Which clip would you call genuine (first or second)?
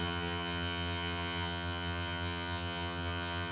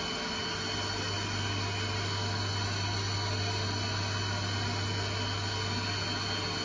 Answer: second